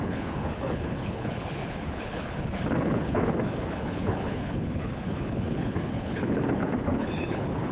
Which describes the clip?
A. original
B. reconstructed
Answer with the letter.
B